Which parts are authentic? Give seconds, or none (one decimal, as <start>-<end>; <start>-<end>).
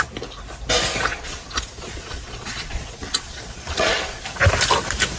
0.0-1.1; 4.2-5.2